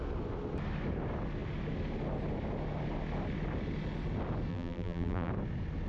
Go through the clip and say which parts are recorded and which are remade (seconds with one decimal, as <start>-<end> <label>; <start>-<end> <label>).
0.0-4.5 recorded; 4.5-5.3 remade; 5.3-5.9 recorded